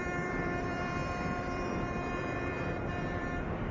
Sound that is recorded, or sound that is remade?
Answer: remade